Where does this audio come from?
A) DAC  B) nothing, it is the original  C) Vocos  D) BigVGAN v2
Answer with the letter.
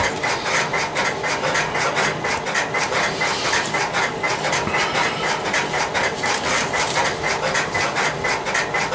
B